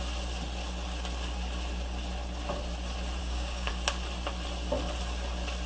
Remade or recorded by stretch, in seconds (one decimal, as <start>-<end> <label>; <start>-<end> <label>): 0.0-3.2 recorded; 3.2-3.7 remade; 3.7-5.7 recorded